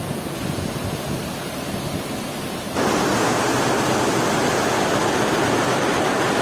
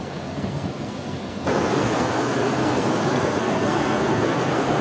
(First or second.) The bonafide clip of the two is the first